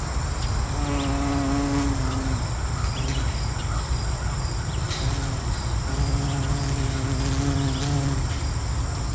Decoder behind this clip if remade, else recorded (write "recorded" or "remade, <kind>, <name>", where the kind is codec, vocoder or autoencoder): recorded